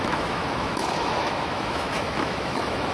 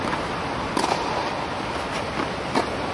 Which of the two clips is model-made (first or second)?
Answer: first